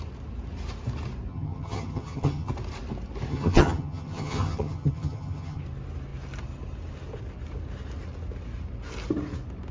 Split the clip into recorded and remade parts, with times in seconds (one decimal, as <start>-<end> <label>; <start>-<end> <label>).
0.0-1.3 recorded; 1.3-2.5 remade; 2.5-3.3 recorded; 3.3-5.6 remade; 5.6-9.7 recorded